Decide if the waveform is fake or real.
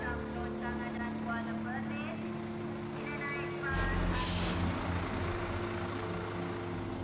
real